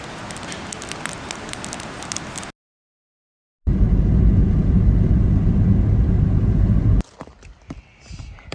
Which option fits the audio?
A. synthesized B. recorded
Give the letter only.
B